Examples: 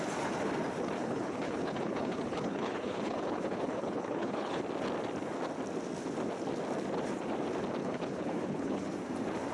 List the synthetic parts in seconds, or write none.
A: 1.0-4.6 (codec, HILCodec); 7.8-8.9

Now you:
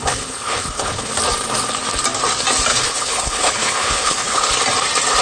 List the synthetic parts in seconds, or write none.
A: 0.0-1.1 (codec, HILCodec); 2.7-4.5

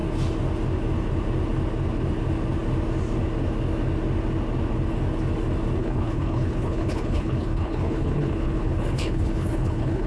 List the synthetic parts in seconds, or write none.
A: 5.8-10.1 (codec, HILCodec)

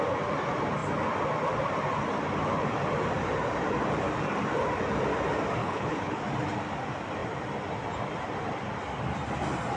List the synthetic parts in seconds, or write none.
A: 5.6-6.2 (codec, HILCodec)

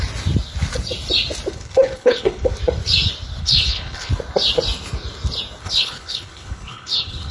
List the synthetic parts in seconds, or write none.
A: 1.5-2.5 (codec, HILCodec); 3.4-4.1; 5.6-7.3

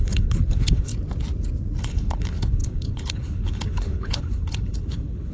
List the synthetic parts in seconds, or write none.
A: 0.0-0.9 (codec, HILCodec); 1.8-5.3